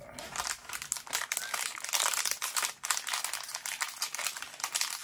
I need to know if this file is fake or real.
real